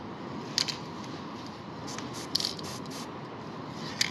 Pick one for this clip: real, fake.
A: real